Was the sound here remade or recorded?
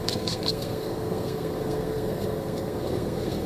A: remade